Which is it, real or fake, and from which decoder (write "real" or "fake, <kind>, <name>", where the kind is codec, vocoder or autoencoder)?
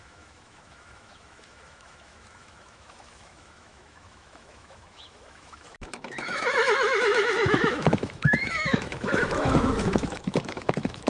fake, autoencoder, DAC-VAE